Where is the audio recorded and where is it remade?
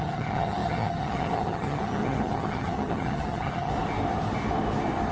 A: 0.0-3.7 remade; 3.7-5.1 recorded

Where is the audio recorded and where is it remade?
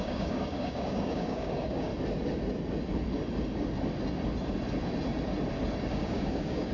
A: 0.0-1.9 remade; 1.9-5.9 recorded; 5.9-6.7 remade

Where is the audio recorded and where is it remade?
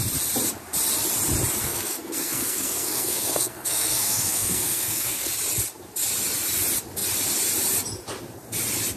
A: 0.0-1.6 recorded; 1.6-5.3 remade; 5.3-9.0 recorded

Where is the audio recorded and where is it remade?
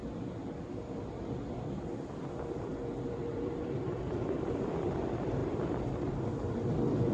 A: 0.0-5.4 remade; 5.4-7.1 recorded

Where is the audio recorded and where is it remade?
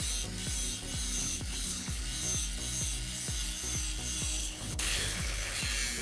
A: 0.0-1.2 recorded; 1.2-2.0 remade; 2.0-4.4 recorded; 4.4-5.6 remade; 5.6-6.0 recorded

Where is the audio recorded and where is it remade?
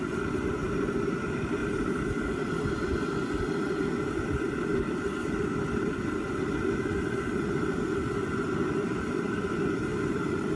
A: 0.0-9.9 recorded; 9.9-10.6 remade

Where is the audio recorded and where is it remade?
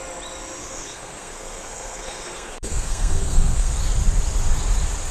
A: 0.0-0.6 recorded; 0.6-3.7 remade; 3.7-5.1 recorded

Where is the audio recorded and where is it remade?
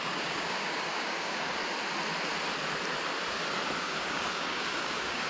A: 0.0-1.6 remade; 1.6-3.8 recorded; 3.8-5.3 remade